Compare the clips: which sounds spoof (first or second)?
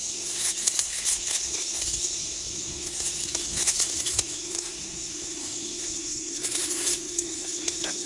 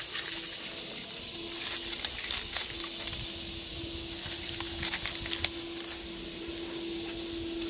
first